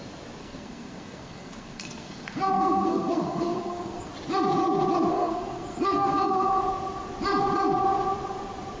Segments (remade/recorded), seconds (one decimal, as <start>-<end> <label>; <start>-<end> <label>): 0.0-0.4 recorded; 0.4-4.1 remade; 4.1-5.1 recorded; 5.1-6.6 remade; 6.6-8.8 recorded